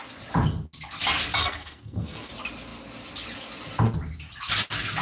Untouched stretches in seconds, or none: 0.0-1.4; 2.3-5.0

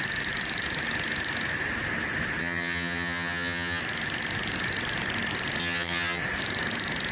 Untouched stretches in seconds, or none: 0.0-2.4; 3.8-5.6; 6.2-7.1

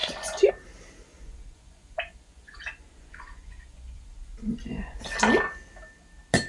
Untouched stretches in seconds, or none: 0.5-1.1; 5.0-6.5

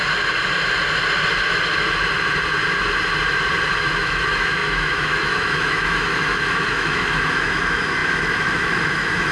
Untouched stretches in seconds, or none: 0.0-3.8

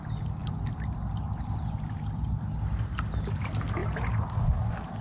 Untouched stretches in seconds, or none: 0.0-5.0

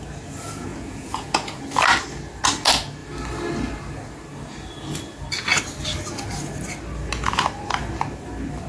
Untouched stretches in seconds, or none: 0.0-0.7; 1.6-8.7

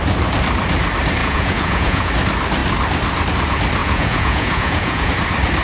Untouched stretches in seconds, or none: 0.0-1.2; 2.1-3.8; 5.1-5.6

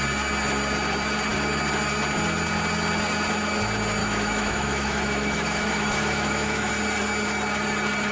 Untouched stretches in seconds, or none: 0.0-4.0; 6.7-8.1